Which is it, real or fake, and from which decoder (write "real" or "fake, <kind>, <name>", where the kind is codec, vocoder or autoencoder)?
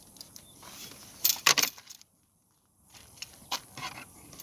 fake, vocoder, BigVGAN v2